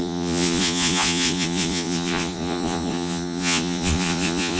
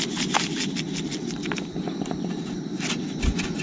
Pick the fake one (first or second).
first